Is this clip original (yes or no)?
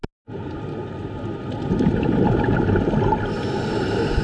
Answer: yes